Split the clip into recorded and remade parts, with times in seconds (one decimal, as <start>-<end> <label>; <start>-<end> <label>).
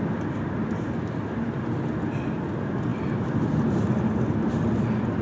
0.0-5.2 recorded